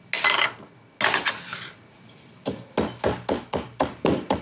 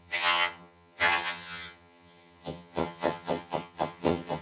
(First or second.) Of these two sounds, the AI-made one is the second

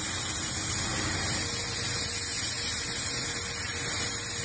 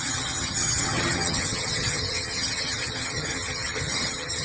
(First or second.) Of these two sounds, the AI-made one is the second